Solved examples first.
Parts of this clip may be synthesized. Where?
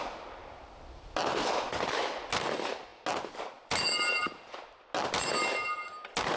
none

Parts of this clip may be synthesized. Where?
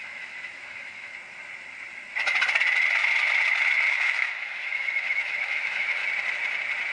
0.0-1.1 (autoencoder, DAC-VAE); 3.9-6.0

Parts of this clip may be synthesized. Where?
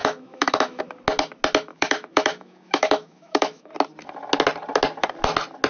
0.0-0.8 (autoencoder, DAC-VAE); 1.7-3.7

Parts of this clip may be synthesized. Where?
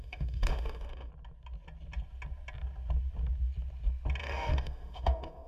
0.0-1.1 (autoencoder, DAC-VAE); 4.2-5.5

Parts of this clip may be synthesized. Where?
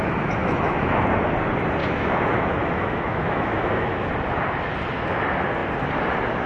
0.4-1.0 (autoencoder, DAC-VAE); 1.8-4.1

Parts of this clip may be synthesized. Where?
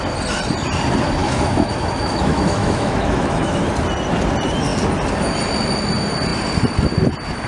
1.2-3.6 (autoencoder, DAC-VAE)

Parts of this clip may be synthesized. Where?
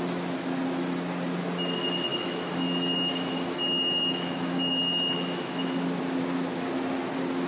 2.1-6.0 (autoencoder, DAC-VAE)